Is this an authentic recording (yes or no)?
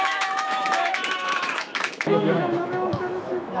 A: no